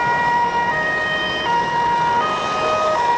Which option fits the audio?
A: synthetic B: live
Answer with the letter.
B